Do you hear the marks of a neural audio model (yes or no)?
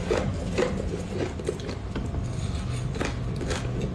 no